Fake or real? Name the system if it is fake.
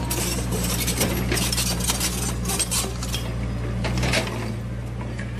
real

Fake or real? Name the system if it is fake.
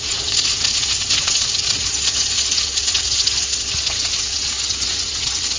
fake, vocoder, WaveNeXt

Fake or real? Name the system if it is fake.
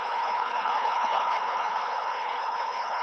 fake, codec, HILCodec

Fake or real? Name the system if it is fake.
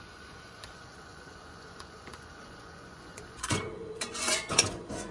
fake, vocoder, Vocos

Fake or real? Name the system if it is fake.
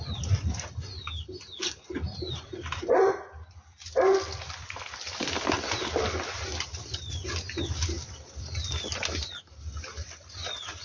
real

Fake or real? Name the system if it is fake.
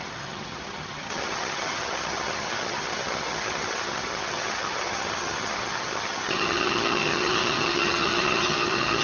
fake, vocoder, HiFi-GAN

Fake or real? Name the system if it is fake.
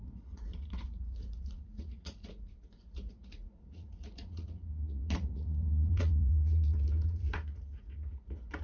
fake, vocoder, Vocos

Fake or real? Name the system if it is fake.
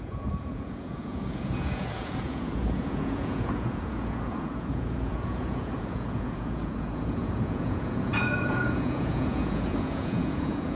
fake, vocoder, Vocos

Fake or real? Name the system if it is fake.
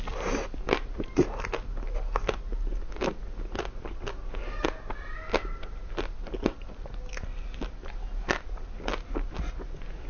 real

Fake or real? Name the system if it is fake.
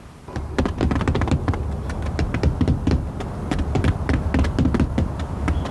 real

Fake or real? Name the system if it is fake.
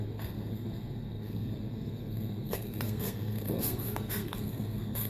fake, codec, SNAC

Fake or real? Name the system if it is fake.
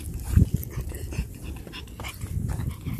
real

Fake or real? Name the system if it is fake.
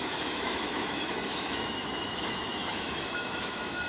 fake, autoencoder, DAC-VAE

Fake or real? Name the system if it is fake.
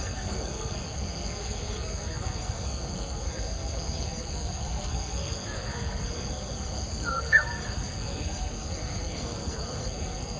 fake, codec, SNAC